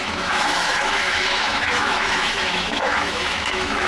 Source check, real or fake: fake